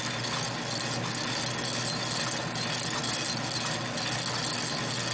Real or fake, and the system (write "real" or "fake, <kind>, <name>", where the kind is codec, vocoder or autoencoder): real